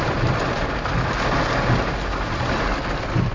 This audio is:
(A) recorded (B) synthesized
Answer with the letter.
A